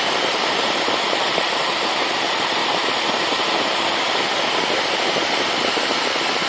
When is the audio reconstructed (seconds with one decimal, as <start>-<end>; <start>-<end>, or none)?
0.0-2.6